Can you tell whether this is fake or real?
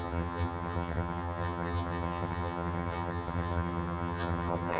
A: fake